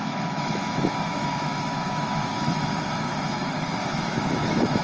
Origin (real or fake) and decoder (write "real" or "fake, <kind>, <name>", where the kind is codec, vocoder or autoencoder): fake, autoencoder, DAC-VAE